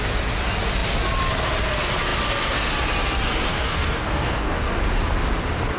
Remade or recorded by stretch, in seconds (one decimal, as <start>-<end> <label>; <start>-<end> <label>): 0.0-3.5 recorded; 3.5-4.7 remade; 4.7-5.8 recorded